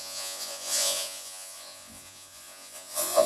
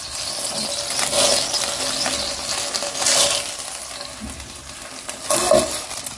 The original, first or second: second